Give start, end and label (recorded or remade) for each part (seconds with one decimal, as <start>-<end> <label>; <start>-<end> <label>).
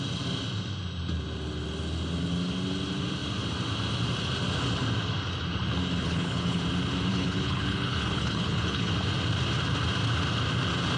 0.0-6.0 recorded; 6.0-6.6 remade; 6.6-7.1 recorded; 7.1-8.9 remade; 8.9-11.0 recorded